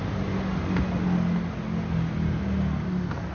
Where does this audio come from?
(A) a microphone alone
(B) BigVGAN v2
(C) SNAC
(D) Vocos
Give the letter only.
A